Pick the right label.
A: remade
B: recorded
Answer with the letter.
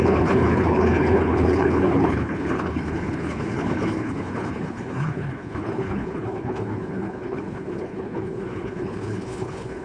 A